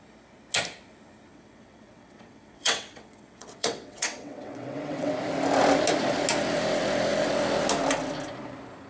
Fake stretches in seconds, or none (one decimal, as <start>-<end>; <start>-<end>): 1.3-5.1